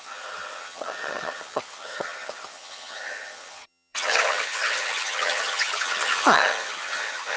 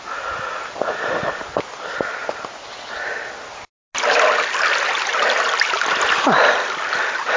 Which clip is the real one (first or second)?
second